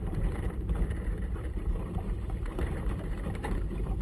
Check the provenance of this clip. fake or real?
fake